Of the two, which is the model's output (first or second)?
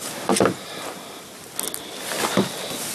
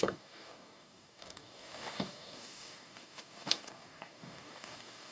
second